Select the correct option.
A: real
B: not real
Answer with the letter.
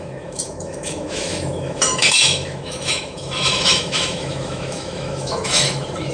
B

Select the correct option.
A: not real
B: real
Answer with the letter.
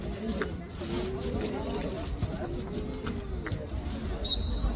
B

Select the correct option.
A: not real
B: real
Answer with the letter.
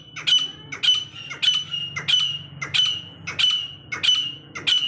B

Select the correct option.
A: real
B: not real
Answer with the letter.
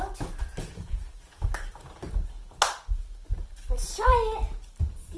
A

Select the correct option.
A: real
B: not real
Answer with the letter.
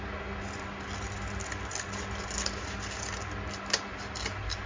A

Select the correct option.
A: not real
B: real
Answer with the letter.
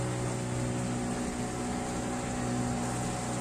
B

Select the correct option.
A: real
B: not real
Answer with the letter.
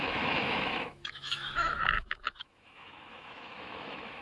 B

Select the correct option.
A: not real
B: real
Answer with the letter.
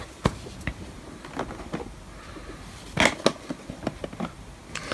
B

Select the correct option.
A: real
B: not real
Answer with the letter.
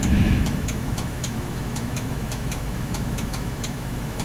B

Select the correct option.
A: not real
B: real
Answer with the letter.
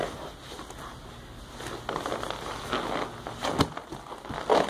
B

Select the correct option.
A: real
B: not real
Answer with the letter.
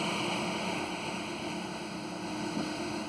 B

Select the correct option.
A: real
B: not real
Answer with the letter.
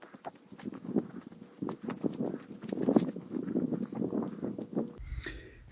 A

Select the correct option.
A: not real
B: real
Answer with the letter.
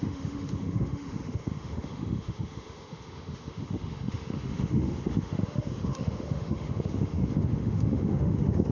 A